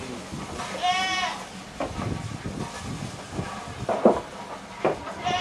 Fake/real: real